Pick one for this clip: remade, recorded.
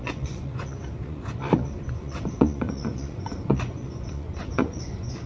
remade